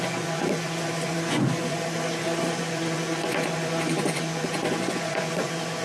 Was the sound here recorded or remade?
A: remade